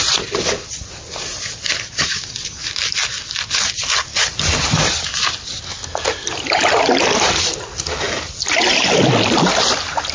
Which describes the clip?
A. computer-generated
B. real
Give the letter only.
B